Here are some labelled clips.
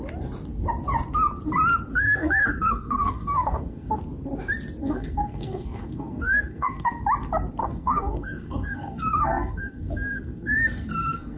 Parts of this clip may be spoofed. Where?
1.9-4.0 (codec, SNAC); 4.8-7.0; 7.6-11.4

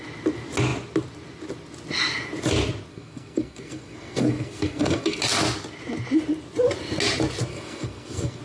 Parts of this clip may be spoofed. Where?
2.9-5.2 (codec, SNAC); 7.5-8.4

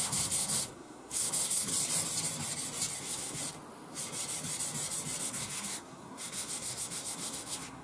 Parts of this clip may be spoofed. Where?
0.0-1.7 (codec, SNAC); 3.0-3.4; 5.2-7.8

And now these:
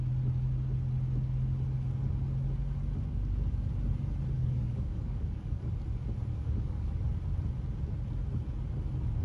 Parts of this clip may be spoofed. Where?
4.4-5.6 (codec, DAC); 6.3-7.0

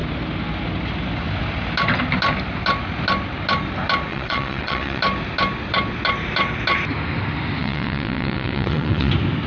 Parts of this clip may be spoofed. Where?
4.1-5.0 (vocoder, WaveNeXt); 7.6-9.1